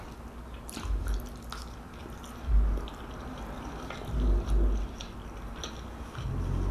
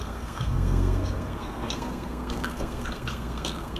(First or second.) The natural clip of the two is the first